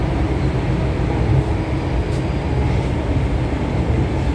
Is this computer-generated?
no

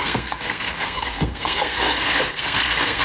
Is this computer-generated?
yes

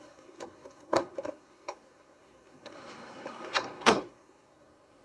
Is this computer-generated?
yes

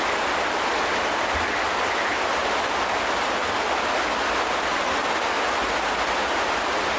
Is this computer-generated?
no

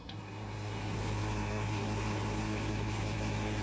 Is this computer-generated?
yes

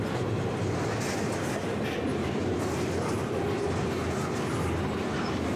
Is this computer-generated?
no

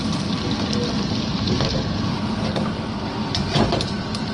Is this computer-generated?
no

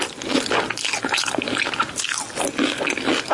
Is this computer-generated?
no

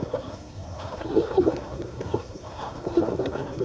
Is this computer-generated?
yes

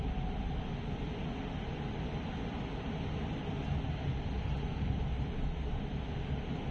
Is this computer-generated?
no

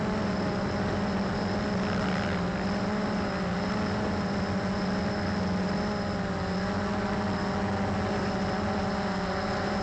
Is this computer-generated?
no